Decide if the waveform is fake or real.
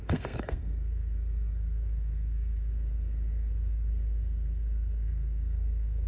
fake